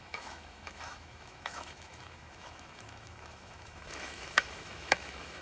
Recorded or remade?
remade